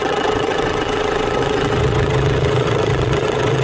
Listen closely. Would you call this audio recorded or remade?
remade